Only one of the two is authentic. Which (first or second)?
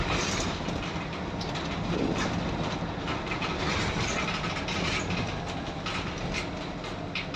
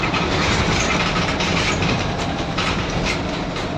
first